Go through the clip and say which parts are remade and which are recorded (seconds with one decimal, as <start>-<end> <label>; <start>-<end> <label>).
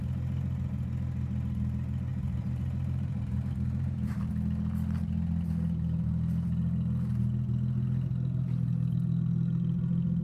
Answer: 0.0-2.1 recorded; 2.1-4.3 remade; 4.3-10.2 recorded